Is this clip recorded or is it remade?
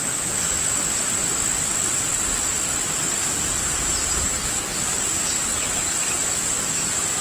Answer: recorded